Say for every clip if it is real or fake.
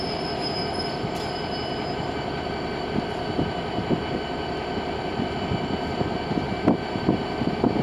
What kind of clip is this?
real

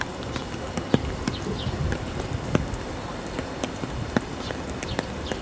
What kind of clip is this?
real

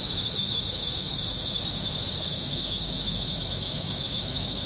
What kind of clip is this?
fake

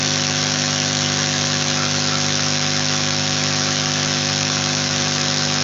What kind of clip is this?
fake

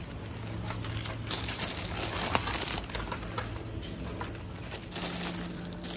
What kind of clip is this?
real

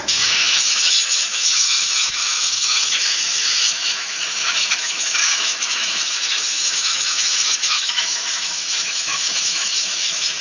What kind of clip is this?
fake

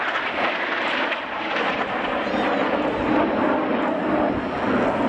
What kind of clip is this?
real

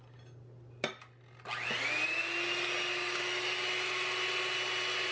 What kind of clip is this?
real